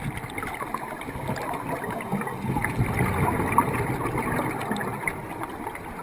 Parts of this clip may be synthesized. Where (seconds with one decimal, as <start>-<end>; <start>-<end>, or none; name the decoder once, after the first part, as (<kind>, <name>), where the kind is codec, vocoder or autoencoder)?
0.7-1.4 (vocoder, BigVGAN v2); 2.6-4.0; 4.8-5.6